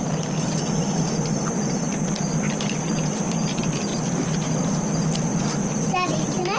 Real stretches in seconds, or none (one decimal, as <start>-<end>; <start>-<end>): 0.0-6.6